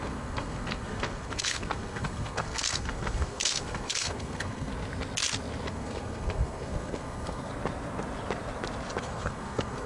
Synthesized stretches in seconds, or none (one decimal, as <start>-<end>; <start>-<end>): 0.0-4.7; 5.7-7.5; 9.0-9.9